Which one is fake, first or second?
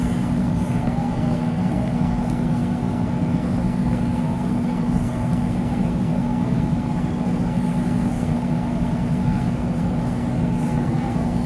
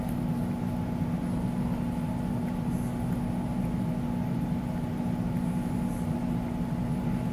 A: first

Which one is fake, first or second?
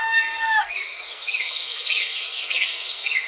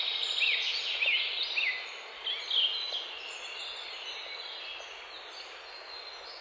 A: first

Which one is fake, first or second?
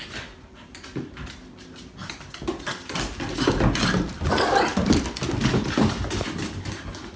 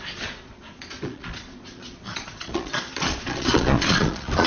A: second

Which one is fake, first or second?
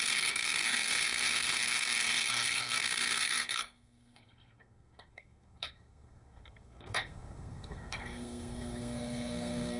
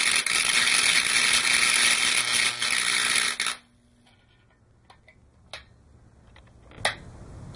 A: first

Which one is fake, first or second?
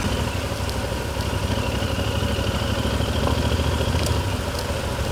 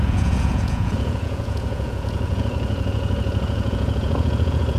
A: second